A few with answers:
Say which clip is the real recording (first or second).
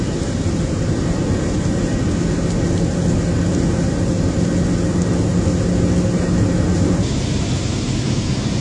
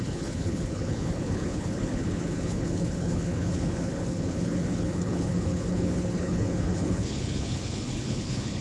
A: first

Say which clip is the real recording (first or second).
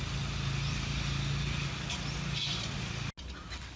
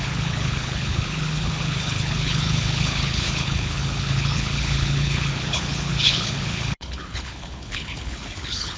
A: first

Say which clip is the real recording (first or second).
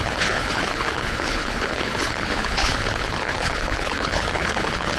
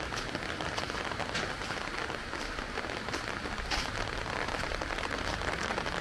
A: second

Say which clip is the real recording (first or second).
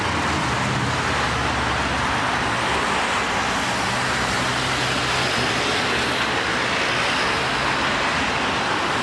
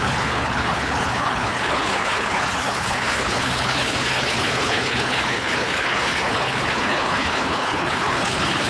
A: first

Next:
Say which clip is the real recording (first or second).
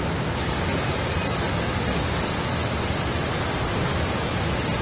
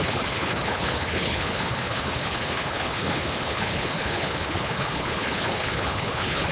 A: first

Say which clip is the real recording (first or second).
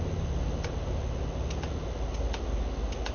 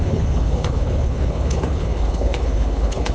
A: first